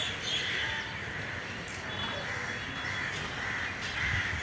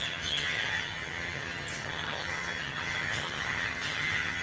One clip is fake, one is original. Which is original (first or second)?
first